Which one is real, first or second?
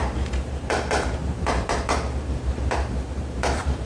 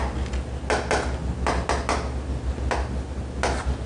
second